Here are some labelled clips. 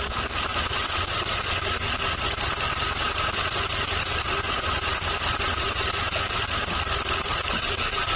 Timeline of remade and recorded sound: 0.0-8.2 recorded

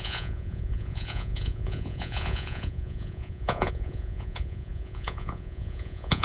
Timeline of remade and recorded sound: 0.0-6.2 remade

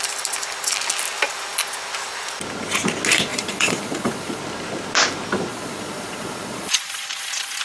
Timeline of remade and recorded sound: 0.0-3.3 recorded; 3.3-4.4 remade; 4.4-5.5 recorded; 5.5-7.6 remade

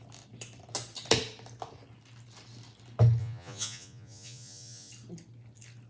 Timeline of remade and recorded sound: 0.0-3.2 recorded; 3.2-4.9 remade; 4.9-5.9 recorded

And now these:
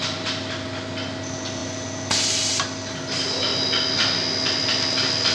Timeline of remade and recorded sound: 0.0-5.3 recorded

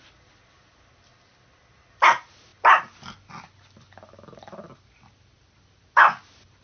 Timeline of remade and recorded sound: 0.0-6.6 recorded

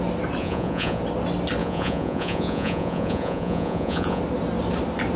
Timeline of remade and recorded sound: 0.0-0.4 recorded; 0.4-1.0 remade; 1.0-1.6 recorded; 1.6-4.2 remade; 4.2-5.2 recorded